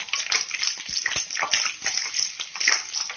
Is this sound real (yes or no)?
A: yes